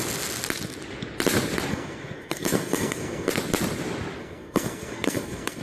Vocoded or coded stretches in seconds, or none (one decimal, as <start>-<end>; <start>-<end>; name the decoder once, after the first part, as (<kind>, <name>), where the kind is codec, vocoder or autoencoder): 1.7-3.3 (codec, SNAC); 4.2-5.6